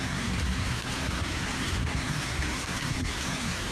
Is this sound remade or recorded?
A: remade